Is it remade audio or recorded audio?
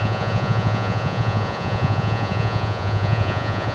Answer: remade